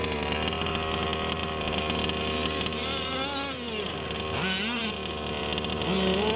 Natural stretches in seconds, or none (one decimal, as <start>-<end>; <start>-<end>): 0.0-6.4